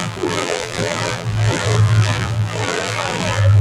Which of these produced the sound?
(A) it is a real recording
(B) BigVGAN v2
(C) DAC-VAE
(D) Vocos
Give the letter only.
B